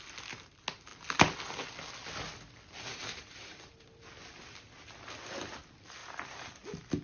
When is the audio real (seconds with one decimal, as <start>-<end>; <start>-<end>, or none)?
0.0-2.9; 4.0-6.0; 6.5-7.0